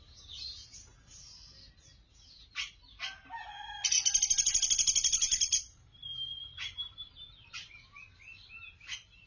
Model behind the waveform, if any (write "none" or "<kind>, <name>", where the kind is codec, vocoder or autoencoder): none